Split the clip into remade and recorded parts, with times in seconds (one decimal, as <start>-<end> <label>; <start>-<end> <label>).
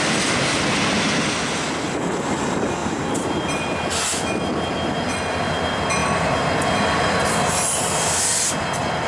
0.0-2.8 recorded; 2.8-3.8 remade; 3.8-9.1 recorded